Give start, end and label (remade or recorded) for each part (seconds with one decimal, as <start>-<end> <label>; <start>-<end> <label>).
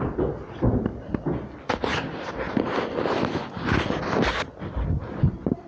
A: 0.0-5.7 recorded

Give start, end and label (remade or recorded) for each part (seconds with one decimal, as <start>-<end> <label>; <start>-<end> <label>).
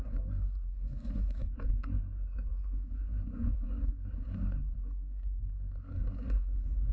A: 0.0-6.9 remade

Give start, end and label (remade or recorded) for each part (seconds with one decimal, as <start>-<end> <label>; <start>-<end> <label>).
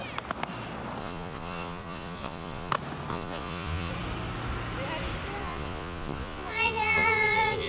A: 0.0-1.0 recorded; 1.0-2.7 remade; 2.7-3.1 recorded; 3.1-3.9 remade; 3.9-5.4 recorded; 5.4-7.7 remade